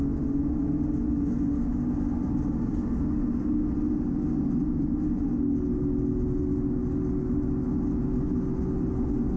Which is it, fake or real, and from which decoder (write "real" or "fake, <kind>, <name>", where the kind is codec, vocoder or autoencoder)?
real